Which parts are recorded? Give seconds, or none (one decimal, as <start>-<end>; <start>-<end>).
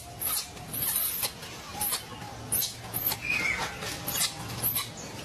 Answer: 0.0-5.2